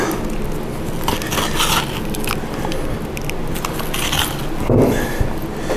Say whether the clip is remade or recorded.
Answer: recorded